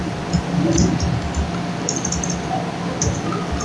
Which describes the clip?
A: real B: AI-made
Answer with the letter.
A